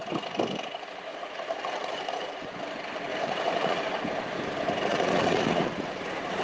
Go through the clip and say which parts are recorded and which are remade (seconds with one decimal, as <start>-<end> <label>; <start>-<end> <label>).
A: 0.0-1.1 recorded; 1.1-2.5 remade; 2.5-3.1 recorded; 3.1-3.8 remade; 3.8-4.9 recorded; 4.9-6.4 remade